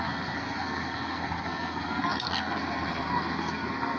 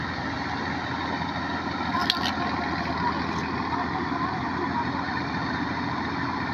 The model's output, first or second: first